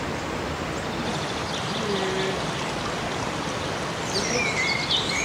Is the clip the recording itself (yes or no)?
yes